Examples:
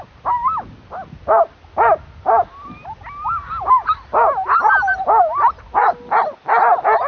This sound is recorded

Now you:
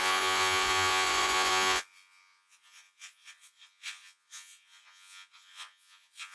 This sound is remade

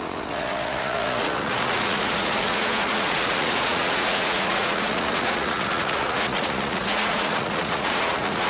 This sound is remade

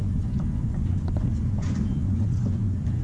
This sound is remade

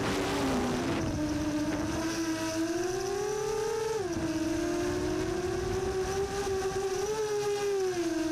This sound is recorded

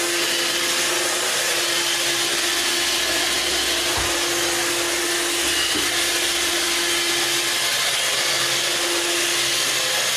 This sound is recorded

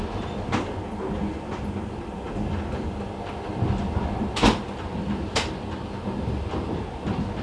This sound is recorded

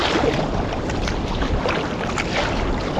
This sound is recorded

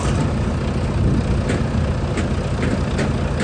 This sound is recorded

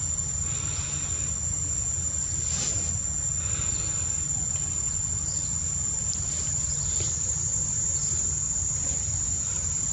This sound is recorded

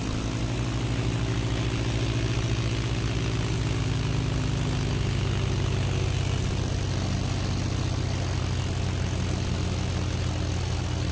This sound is recorded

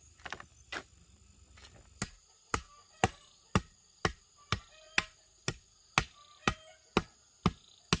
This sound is recorded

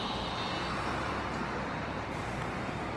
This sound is recorded